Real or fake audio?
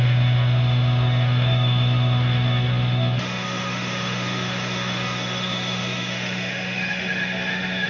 fake